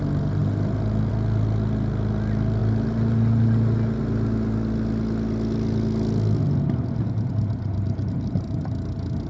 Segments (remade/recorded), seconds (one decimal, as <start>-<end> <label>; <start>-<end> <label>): 0.0-9.3 recorded